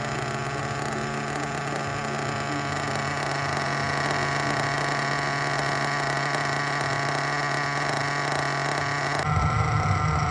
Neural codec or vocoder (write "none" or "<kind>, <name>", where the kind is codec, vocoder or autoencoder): none